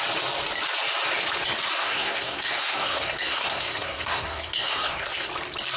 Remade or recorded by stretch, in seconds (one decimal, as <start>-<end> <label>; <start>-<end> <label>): 0.0-1.8 recorded; 1.8-5.3 remade; 5.3-5.8 recorded